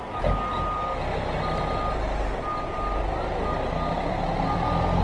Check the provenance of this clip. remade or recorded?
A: recorded